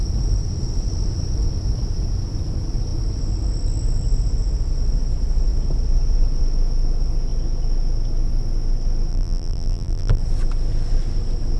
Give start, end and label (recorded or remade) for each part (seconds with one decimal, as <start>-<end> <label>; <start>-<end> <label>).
0.0-9.1 recorded; 9.1-10.2 remade; 10.2-11.6 recorded